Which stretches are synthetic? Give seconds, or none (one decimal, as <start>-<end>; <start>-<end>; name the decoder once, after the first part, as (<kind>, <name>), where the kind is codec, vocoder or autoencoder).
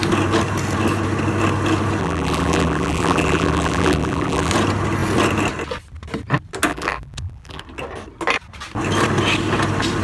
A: 2.0-4.5 (vocoder, BigVGAN v2); 6.7-7.6